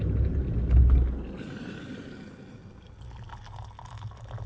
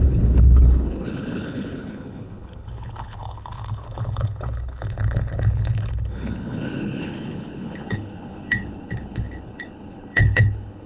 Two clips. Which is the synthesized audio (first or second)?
second